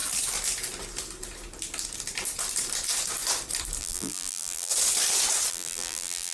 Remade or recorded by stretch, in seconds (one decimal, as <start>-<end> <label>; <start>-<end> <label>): 0.0-3.8 recorded; 3.8-4.7 remade; 4.7-5.5 recorded; 5.5-6.3 remade